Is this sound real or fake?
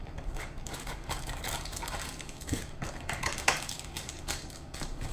fake